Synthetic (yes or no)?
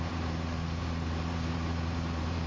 yes